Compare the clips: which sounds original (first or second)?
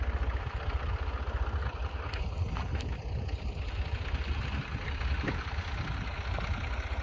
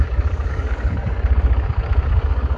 first